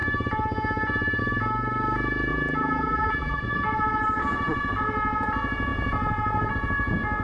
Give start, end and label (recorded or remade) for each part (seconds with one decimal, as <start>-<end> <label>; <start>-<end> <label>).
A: 0.0-2.3 recorded; 2.3-3.4 remade; 3.4-7.2 recorded